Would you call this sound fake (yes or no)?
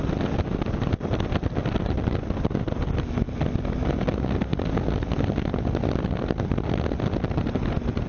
no